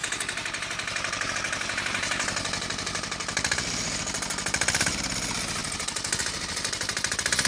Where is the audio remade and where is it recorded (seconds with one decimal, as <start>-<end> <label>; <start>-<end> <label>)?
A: 0.0-1.3 remade; 1.3-7.5 recorded